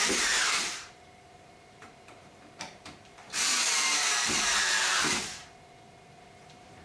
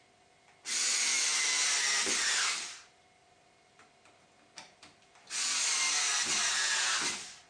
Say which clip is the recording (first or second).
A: second